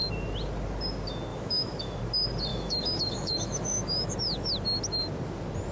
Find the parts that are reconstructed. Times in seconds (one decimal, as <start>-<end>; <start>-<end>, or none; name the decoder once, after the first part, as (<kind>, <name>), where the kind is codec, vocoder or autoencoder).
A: 1.3-2.0 (autoencoder, DAC-VAE); 2.5-4.5